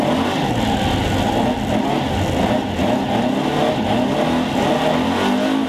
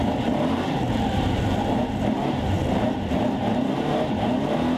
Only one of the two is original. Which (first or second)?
first